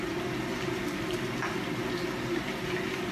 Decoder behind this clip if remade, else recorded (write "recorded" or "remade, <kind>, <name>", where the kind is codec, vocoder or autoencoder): recorded